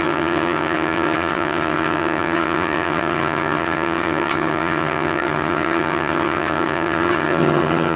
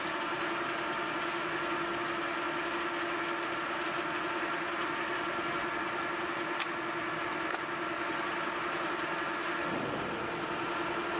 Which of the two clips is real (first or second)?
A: second